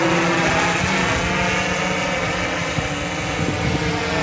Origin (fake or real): real